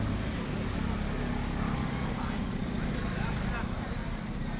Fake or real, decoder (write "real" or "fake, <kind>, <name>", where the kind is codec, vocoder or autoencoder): real